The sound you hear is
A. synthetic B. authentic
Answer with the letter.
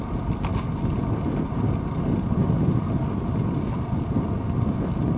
B